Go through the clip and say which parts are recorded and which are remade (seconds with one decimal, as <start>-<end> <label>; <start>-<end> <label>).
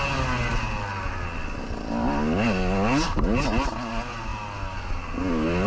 0.0-5.7 recorded